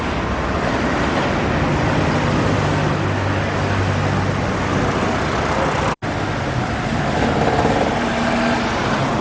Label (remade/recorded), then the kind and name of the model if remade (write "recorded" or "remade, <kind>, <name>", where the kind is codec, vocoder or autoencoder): recorded